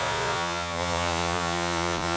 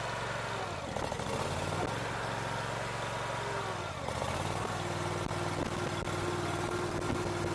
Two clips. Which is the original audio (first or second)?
second